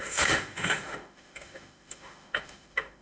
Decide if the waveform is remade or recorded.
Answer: remade